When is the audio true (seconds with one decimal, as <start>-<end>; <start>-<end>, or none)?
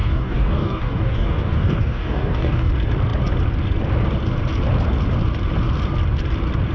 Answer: 2.7-6.7